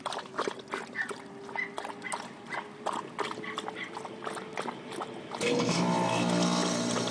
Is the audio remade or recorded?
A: recorded